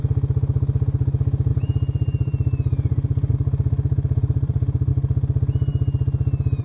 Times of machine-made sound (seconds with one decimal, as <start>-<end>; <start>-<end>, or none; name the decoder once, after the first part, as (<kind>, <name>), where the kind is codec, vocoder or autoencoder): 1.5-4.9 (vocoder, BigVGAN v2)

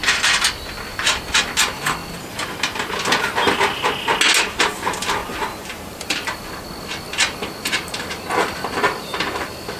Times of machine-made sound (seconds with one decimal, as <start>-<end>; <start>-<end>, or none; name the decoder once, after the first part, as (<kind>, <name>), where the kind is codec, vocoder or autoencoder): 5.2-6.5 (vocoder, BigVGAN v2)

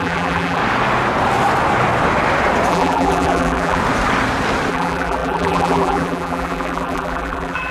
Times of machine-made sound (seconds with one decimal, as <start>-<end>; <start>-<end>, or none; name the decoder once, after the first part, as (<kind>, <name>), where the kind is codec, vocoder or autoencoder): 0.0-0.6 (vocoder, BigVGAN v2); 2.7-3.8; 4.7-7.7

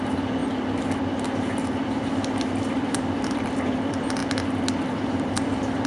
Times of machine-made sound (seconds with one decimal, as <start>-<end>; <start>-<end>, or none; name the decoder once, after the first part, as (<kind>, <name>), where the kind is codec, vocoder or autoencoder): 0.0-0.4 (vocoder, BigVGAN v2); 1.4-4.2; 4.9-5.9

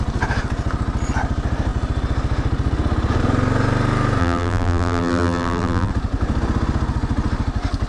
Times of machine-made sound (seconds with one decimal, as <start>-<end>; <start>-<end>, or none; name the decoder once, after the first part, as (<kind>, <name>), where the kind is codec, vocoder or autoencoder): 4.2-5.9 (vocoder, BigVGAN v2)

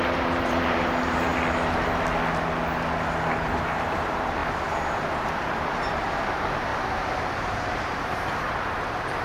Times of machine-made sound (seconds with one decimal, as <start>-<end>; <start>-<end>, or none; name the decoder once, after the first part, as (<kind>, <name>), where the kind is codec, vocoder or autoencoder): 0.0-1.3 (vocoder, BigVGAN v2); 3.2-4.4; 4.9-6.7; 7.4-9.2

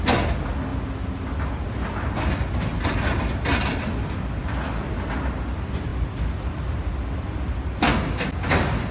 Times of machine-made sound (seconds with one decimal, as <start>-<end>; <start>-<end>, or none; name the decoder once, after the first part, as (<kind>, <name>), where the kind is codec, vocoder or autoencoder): none